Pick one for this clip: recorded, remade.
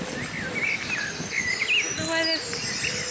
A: recorded